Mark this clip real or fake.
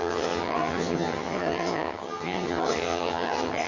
fake